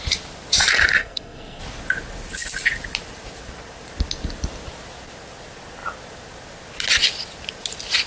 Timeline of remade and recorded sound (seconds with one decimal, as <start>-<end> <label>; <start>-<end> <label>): 0.0-1.0 recorded; 1.0-1.6 remade; 1.6-8.1 recorded